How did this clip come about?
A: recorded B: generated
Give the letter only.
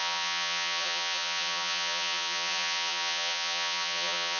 B